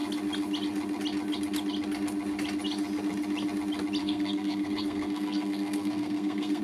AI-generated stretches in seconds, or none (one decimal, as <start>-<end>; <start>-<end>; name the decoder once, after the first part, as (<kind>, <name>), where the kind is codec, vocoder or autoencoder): 4.0-6.6 (codec, SNAC)